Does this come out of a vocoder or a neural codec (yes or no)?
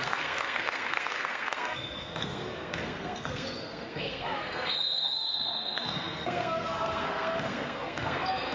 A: yes